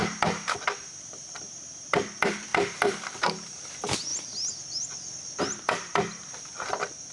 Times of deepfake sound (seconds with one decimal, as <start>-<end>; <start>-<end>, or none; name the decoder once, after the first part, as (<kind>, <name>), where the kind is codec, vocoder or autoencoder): 0.0-4.1 (vocoder, BigVGAN v2); 5.4-7.1